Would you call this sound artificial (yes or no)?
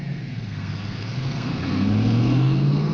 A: yes